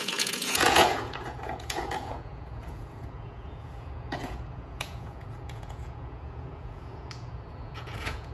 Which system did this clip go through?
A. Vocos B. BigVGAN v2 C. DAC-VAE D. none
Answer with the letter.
A